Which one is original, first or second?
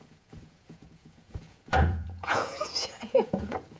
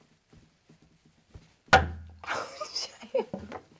second